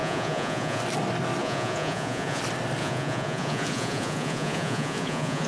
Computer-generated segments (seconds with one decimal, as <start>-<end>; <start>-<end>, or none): 0.0-0.8; 1.4-2.4; 2.8-5.5